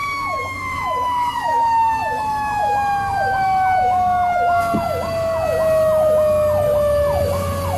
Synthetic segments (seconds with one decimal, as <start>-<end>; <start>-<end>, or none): 0.0-4.6

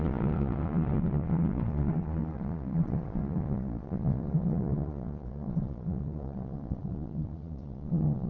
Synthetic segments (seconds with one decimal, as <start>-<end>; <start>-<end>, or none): 0.0-8.3